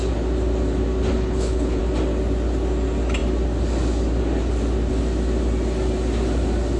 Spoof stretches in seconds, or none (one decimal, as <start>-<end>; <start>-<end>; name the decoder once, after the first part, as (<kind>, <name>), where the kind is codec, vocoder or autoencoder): 1.1-1.8 (codec, HILCodec)